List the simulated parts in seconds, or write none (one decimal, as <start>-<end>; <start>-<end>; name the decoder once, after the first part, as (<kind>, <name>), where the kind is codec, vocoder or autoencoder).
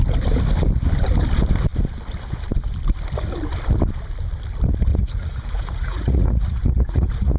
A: 4.9-7.4 (vocoder, Vocos)